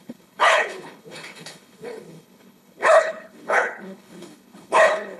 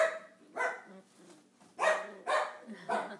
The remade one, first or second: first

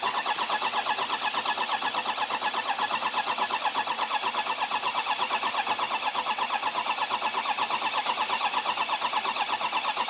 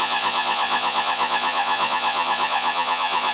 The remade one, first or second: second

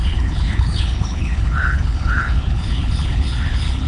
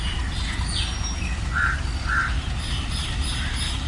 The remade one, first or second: first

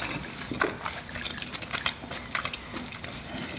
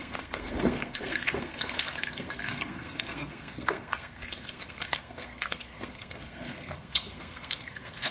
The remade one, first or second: second